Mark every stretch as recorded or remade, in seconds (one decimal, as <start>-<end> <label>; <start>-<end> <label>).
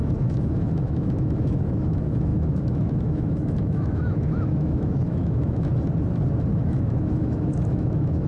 0.0-5.7 remade; 5.7-6.5 recorded; 6.5-8.3 remade